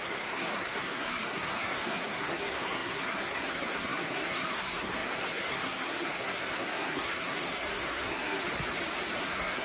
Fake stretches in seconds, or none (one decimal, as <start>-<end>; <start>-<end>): 0.0-8.4; 9.2-9.6